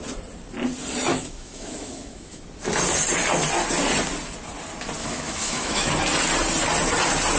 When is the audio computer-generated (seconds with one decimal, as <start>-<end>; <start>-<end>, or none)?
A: 1.1-2.4; 5.0-5.9